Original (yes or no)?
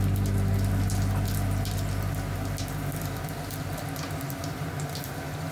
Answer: yes